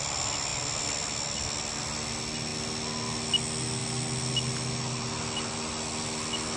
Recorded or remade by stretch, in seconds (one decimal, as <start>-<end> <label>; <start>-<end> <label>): 0.0-6.6 recorded

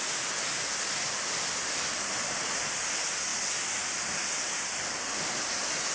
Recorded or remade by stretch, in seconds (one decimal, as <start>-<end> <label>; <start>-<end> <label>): 0.0-5.9 recorded

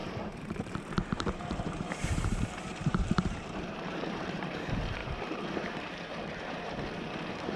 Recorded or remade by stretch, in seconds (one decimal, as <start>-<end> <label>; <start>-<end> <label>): 0.0-7.6 remade